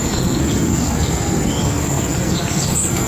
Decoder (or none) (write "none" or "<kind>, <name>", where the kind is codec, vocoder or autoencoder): codec, SNAC